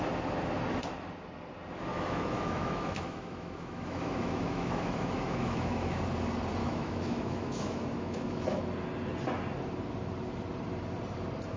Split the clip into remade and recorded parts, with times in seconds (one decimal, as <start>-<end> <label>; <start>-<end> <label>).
0.0-1.9 recorded; 1.9-6.0 remade; 6.0-6.6 recorded; 6.6-8.6 remade; 8.6-11.6 recorded